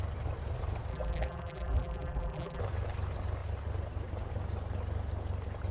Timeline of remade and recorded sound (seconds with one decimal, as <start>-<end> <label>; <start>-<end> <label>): 0.0-0.9 recorded; 0.9-2.6 remade; 2.6-5.7 recorded